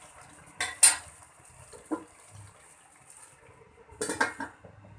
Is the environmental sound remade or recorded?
recorded